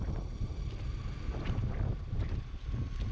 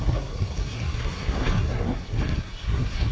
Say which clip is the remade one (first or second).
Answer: second